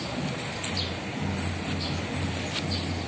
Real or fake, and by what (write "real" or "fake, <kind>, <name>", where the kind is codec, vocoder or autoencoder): real